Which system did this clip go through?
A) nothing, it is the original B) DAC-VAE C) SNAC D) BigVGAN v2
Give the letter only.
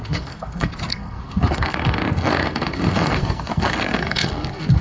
C